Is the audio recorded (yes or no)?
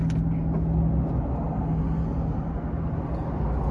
yes